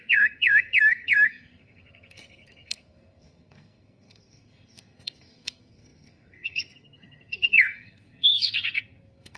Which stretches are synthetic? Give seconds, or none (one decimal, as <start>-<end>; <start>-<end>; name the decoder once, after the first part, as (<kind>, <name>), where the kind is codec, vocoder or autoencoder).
0.0-9.4 (codec, SNAC)